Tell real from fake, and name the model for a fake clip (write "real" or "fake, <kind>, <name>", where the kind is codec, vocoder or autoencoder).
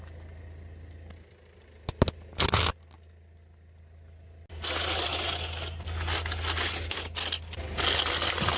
real